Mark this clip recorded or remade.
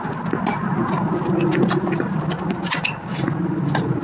recorded